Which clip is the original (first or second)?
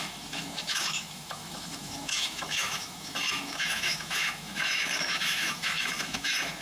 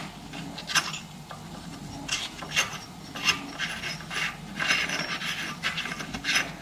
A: second